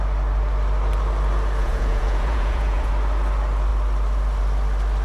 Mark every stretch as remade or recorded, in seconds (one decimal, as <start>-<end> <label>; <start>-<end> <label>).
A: 0.0-1.6 recorded; 1.6-2.9 remade; 2.9-5.0 recorded